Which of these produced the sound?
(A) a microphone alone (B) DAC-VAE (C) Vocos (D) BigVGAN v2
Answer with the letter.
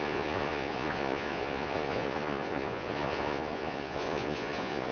C